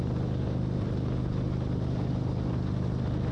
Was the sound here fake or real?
real